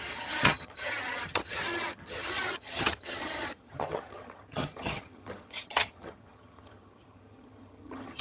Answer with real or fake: fake